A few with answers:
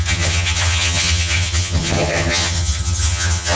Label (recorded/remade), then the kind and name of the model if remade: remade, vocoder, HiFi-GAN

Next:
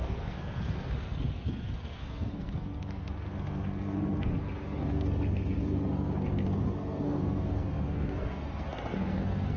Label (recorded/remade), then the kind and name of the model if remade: remade, codec, SNAC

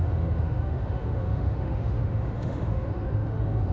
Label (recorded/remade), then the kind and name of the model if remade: remade, autoencoder, DAC-VAE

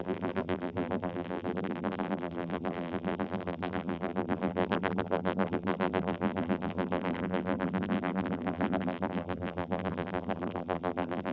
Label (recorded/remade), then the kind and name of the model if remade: remade, vocoder, BigVGAN v2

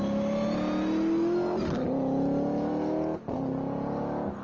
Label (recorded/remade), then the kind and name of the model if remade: recorded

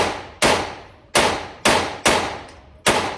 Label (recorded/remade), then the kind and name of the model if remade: recorded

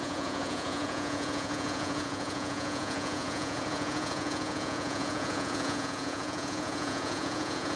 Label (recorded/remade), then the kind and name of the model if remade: remade, vocoder, Vocos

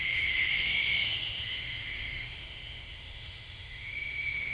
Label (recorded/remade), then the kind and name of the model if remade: remade, autoencoder, DAC-VAE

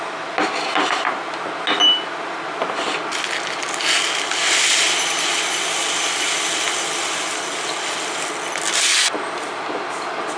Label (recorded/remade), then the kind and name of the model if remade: recorded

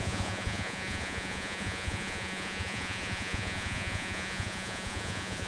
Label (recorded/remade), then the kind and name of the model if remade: remade, vocoder, Vocos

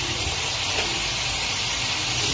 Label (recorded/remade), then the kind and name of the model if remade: recorded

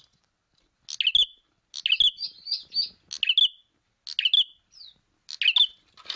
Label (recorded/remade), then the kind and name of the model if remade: recorded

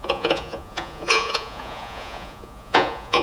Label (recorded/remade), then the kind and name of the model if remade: remade, vocoder, Vocos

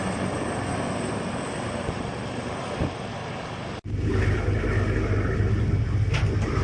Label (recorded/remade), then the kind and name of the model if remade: recorded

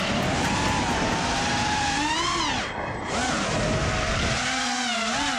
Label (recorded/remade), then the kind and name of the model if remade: recorded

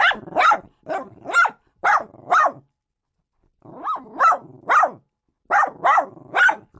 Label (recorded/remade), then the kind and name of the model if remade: recorded